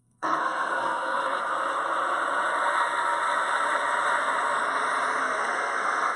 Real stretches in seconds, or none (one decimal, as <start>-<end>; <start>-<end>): 1.5-5.2